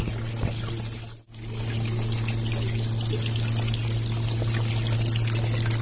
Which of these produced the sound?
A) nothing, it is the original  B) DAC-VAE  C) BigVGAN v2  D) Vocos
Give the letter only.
A